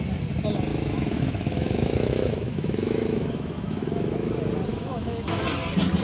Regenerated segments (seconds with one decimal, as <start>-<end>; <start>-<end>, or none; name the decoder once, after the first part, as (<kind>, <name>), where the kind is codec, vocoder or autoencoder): 0.7-4.3 (autoencoder, DAC-VAE); 4.7-5.4